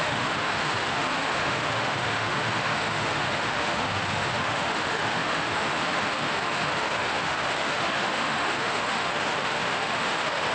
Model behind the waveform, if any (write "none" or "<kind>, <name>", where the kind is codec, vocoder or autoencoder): autoencoder, DAC-VAE